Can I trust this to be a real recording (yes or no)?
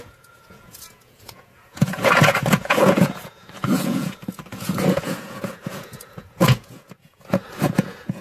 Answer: no